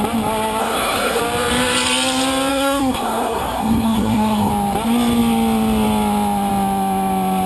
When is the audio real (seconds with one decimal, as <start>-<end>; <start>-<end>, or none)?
0.0-0.6; 1.2-2.5; 4.5-7.5